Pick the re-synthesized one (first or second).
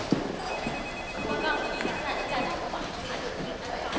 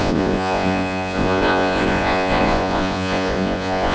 second